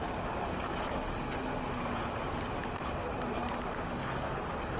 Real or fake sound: real